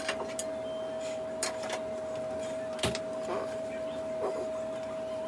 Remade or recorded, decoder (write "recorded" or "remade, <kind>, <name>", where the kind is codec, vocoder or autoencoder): recorded